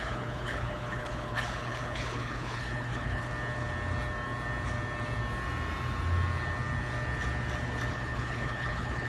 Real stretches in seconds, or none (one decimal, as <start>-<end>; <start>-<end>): 3.3-7.9